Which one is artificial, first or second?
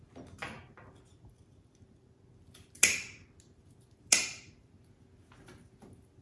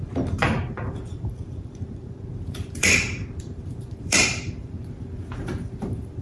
second